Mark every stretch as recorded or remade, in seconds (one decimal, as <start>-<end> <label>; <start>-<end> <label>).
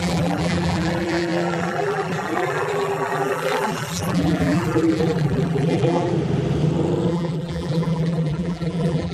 0.0-6.1 remade; 6.1-7.1 recorded; 7.1-9.1 remade